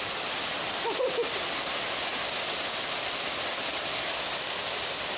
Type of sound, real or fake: real